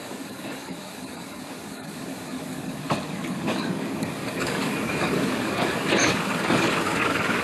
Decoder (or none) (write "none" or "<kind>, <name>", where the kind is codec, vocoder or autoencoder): codec, DAC